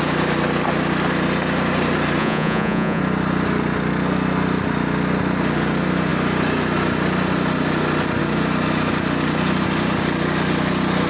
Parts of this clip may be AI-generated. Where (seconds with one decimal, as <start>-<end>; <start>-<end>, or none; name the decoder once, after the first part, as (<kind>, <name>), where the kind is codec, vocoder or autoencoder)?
2.2-3.0 (vocoder, Vocos)